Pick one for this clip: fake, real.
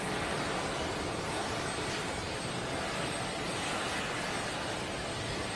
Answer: real